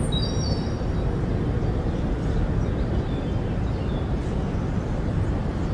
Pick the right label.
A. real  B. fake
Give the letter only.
A